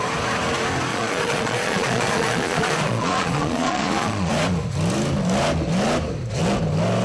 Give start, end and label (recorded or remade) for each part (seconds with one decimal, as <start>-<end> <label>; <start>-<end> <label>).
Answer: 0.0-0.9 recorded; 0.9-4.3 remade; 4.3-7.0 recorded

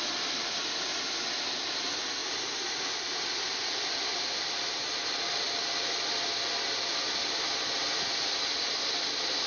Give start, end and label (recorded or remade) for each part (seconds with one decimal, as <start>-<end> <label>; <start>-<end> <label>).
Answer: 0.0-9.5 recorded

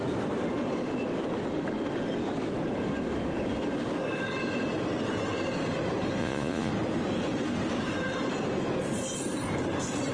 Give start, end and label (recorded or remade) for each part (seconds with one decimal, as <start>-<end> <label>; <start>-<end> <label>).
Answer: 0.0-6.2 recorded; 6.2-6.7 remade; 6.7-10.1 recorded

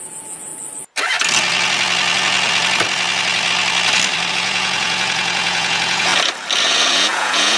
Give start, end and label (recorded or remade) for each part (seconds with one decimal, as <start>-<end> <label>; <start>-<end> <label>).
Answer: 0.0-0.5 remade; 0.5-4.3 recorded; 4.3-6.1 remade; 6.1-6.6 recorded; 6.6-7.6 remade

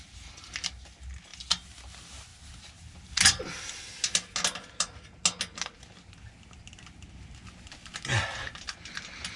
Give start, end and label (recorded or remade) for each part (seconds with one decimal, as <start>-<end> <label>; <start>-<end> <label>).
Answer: 0.0-9.4 recorded